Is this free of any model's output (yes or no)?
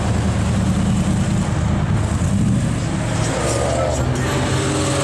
yes